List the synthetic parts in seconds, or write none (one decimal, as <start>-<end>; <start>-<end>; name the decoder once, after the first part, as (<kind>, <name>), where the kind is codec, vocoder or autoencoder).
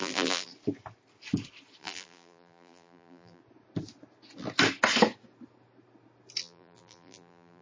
0.0-0.5 (vocoder, BigVGAN v2); 1.8-3.4; 6.4-7.6